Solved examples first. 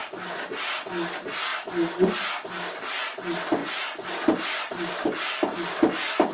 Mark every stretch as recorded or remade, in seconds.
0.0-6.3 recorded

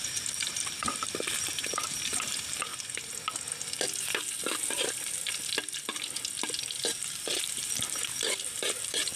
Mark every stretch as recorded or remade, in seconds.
0.0-2.7 remade; 2.7-6.6 recorded; 6.6-9.2 remade

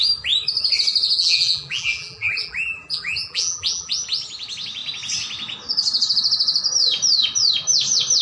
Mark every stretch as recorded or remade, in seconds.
0.0-1.1 recorded; 1.1-3.9 remade; 3.9-8.2 recorded

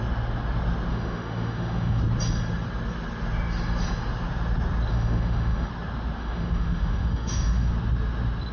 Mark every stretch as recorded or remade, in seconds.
0.0-0.9 recorded; 0.9-2.0 remade; 2.0-4.9 recorded; 4.9-5.7 remade; 5.7-6.2 recorded; 6.2-7.7 remade; 7.7-8.5 recorded

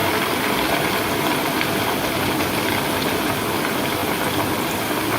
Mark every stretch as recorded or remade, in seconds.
0.0-5.2 recorded

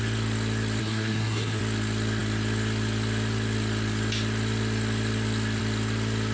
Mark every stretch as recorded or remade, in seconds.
0.0-0.8 recorded; 0.8-1.6 remade; 1.6-6.3 recorded

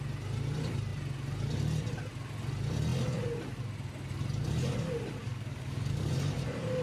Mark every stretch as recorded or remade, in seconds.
0.0-5.2 recorded; 5.2-6.1 remade; 6.1-6.8 recorded